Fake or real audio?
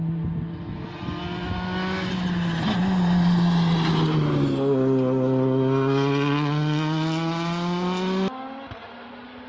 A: real